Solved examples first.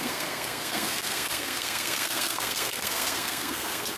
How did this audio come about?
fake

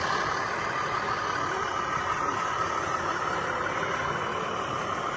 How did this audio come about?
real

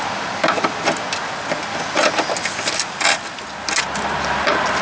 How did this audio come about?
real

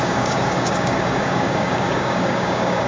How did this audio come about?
fake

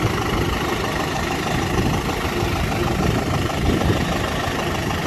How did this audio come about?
real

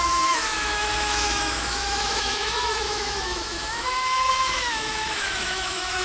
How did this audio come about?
fake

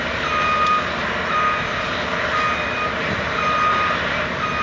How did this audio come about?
real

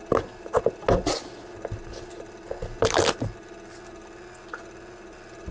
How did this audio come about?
real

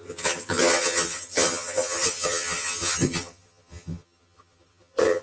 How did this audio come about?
fake